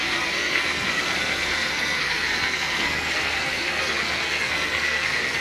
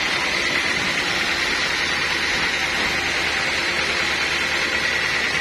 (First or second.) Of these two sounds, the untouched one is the second